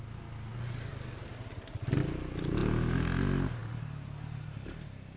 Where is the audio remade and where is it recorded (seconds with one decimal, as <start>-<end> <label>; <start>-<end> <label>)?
0.0-5.2 recorded